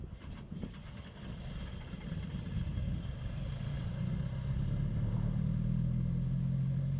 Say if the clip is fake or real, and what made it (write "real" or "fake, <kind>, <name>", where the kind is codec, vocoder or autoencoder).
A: real